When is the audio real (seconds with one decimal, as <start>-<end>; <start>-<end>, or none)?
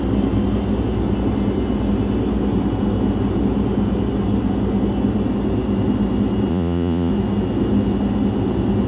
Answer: 0.0-6.5; 7.1-8.9